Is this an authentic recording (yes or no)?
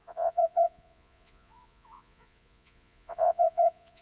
no